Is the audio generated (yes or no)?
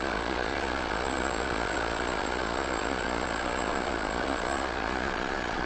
yes